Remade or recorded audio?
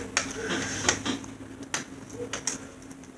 recorded